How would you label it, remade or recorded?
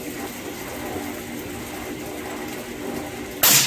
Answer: recorded